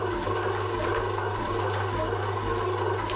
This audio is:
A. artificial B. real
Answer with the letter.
B